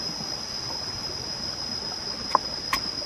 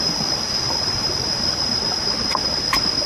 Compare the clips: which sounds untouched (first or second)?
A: first